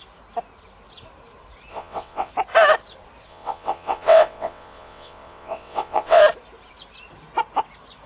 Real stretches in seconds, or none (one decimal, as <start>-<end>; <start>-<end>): 0.0-1.7; 2.3-3.3; 6.2-8.1

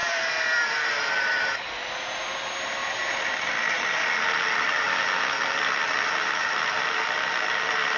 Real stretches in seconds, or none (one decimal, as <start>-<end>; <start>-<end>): 0.9-2.8; 3.5-8.0

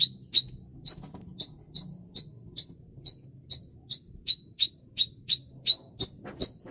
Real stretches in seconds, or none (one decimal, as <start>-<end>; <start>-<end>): 0.0-6.7

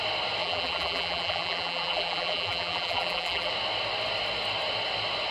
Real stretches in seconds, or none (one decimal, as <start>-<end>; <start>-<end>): 0.0-0.4; 3.5-5.3

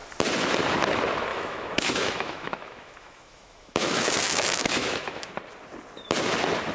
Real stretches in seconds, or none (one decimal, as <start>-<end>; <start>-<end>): 0.0-1.3; 5.3-6.7

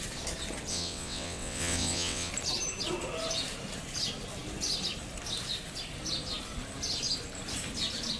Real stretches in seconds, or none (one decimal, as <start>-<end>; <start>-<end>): 0.0-0.7; 2.3-8.2

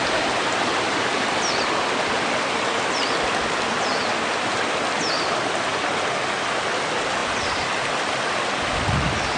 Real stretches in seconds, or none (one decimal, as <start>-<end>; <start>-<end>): 0.0-9.4